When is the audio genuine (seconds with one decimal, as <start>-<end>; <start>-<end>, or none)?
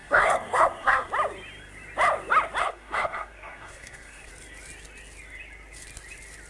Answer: 1.1-2.6; 4.3-6.5